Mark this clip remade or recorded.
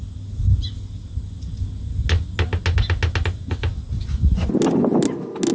recorded